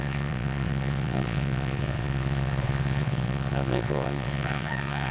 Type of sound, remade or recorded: remade